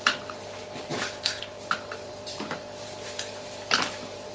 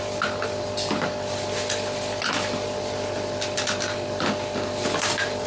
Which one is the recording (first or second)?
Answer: second